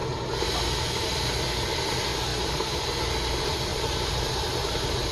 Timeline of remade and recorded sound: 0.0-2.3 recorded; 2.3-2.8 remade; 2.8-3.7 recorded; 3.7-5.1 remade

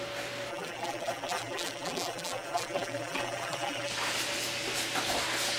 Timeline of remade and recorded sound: 0.0-0.5 recorded; 0.5-3.9 remade; 3.9-5.6 recorded

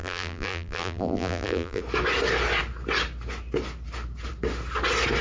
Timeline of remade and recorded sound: 0.0-1.8 remade; 1.8-5.2 recorded

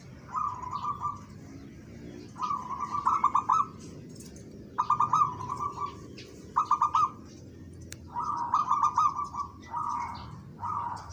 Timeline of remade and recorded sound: 0.0-10.1 recorded; 10.1-11.1 remade